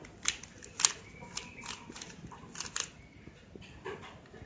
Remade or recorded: recorded